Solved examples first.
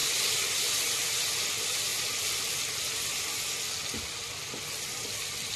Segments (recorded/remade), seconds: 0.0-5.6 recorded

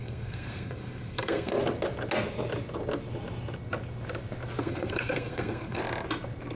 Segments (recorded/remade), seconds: 0.0-1.6 remade; 1.6-4.6 recorded; 4.6-5.8 remade; 5.8-6.6 recorded

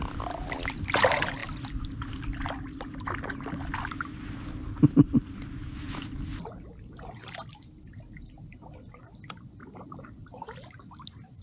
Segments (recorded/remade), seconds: 0.0-11.4 recorded

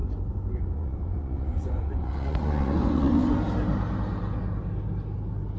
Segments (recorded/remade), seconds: 0.0-3.4 remade; 3.4-5.6 recorded

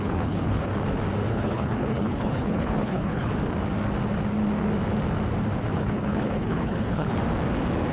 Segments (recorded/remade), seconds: 0.0-0.7 remade; 0.7-1.3 recorded; 1.3-3.3 remade; 3.3-5.7 recorded; 5.7-7.1 remade; 7.1-7.9 recorded

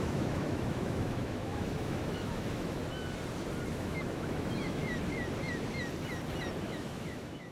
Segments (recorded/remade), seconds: 0.0-2.8 remade; 2.8-3.7 recorded; 3.7-4.8 remade; 4.8-6.6 recorded; 6.6-7.5 remade

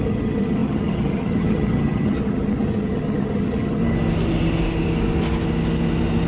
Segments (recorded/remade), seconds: 0.0-3.8 remade; 3.8-6.3 recorded

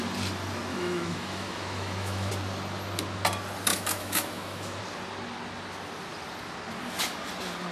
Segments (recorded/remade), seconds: 0.0-0.7 recorded; 0.7-2.3 remade; 2.3-3.7 recorded; 3.7-4.8 remade; 4.8-7.7 recorded